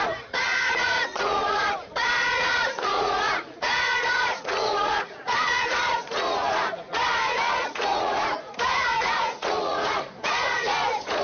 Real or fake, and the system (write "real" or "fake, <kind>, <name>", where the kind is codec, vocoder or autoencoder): fake, vocoder, Vocos